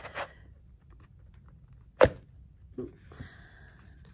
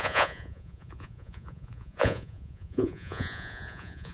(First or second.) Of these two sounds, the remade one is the second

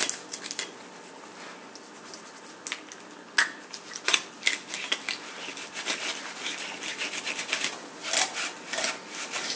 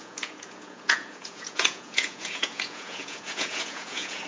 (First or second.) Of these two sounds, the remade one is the second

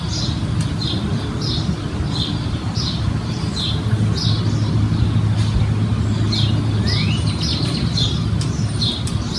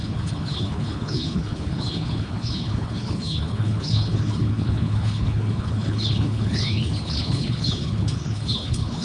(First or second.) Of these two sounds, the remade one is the second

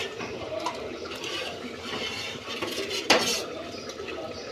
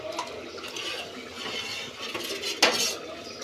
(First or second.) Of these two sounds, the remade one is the first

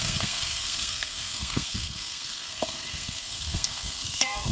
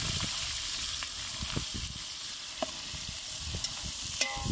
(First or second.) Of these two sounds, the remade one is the first